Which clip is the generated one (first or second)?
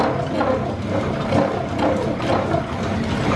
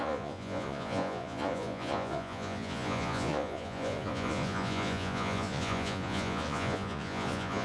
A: second